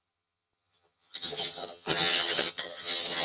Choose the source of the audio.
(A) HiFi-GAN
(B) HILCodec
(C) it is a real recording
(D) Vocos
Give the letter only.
A